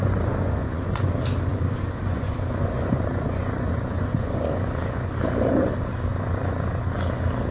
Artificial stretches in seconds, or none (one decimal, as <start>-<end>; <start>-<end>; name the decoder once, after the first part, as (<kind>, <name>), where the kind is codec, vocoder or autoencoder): 0.0-1.1 (vocoder, Vocos); 1.5-5.1; 6.1-6.8